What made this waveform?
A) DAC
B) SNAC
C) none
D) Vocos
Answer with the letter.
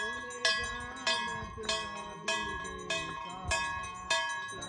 C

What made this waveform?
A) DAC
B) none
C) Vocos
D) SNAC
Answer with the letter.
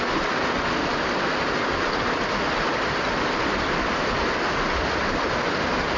B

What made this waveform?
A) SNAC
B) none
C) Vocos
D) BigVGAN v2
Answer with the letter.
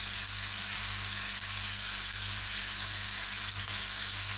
A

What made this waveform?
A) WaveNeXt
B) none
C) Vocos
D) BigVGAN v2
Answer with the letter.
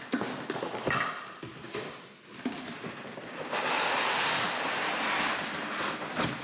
B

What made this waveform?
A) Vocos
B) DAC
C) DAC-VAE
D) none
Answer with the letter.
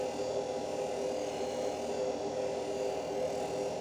D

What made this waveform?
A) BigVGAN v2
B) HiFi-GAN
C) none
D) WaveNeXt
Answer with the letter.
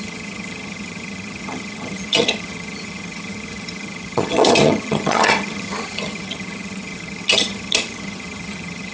B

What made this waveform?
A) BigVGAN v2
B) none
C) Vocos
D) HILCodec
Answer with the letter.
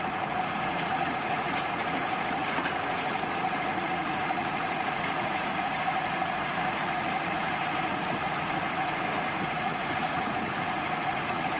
C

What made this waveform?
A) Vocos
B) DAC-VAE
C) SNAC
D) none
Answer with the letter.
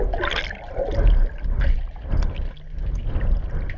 D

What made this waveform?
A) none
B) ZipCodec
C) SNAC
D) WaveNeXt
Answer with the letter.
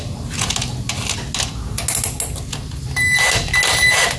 A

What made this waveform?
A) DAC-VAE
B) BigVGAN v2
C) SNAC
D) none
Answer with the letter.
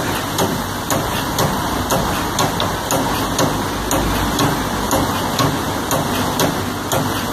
D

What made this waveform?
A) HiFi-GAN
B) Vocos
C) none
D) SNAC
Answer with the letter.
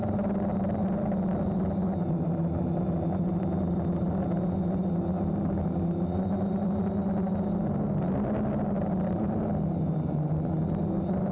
C